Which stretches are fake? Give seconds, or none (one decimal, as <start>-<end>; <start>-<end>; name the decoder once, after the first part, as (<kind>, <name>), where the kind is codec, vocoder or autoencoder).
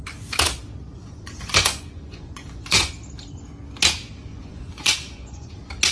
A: 0.9-2.9 (vocoder, Vocos); 4.3-5.5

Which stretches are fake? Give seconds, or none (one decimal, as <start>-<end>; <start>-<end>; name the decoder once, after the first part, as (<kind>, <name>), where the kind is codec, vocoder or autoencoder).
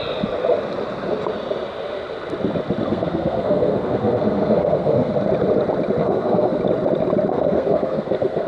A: 2.9-5.1 (codec, SNAC); 6.0-6.6; 7.3-8.5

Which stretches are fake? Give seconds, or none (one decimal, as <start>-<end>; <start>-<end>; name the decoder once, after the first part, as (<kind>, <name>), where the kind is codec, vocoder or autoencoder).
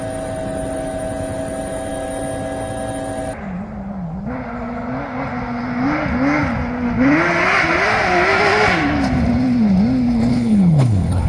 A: 10.3-11.3 (codec, HILCodec)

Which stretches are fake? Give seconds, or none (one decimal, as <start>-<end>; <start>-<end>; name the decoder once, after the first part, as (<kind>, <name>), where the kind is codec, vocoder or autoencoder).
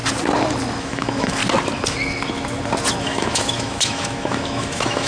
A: 0.8-1.4 (autoencoder, DAC-VAE); 3.0-5.1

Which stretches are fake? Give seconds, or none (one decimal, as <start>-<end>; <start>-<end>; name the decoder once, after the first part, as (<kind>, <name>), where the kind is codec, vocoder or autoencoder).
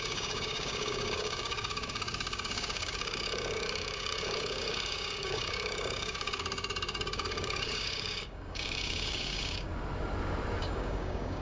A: 0.0-9.7 (codec, DAC); 10.6-11.4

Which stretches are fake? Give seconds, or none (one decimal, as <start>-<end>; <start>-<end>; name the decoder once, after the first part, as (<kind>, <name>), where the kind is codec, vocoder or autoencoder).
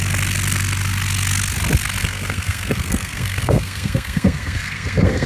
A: 2.0-5.3 (codec, SNAC)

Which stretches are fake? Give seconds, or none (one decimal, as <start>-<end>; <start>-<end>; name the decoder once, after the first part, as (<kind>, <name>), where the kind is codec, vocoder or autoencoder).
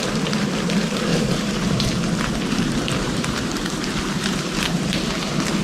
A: 1.1-1.9 (vocoder, BigVGAN v2); 3.0-4.8